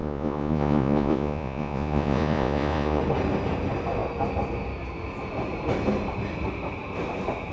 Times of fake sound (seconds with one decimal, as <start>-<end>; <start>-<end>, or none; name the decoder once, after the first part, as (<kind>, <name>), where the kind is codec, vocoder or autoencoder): 0.0-3.0 (vocoder, Vocos)